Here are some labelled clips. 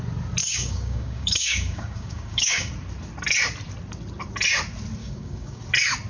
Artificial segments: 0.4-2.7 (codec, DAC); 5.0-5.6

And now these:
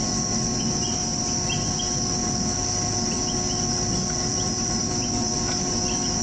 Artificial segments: 4.3-4.9 (vocoder, BigVGAN v2)